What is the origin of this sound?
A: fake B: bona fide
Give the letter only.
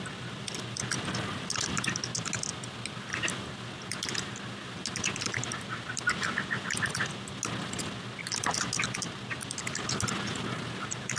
B